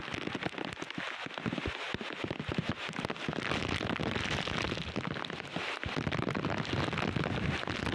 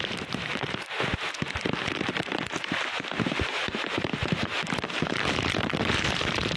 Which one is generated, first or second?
second